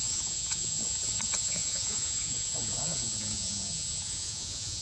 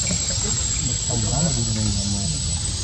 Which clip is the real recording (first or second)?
second